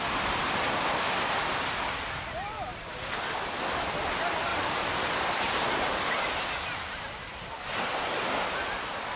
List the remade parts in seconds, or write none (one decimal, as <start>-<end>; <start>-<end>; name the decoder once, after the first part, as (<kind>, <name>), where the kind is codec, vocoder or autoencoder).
4.5-5.9 (vocoder, BigVGAN v2)